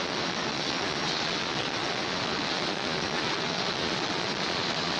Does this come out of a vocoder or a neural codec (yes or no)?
yes